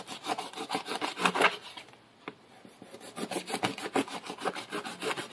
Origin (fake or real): real